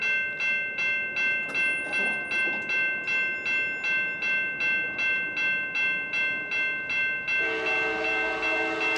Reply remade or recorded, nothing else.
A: recorded